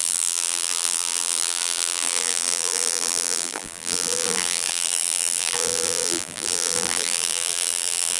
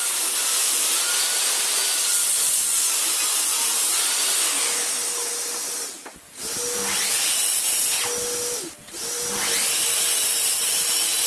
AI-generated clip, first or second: first